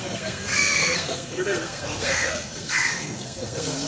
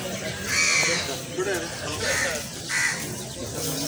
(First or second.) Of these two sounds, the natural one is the second